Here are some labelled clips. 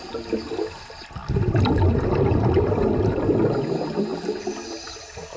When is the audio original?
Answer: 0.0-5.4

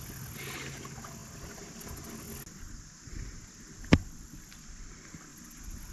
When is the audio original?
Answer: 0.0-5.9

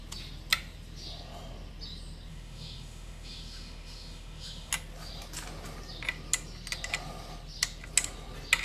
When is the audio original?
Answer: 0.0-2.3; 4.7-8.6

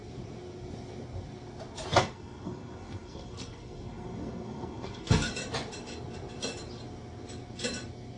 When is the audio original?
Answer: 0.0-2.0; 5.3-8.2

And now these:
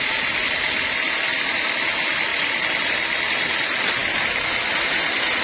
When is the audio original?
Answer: 0.0-5.4

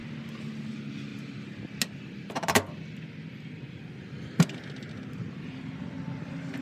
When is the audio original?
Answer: 0.0-6.6